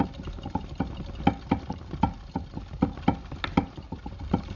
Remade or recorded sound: recorded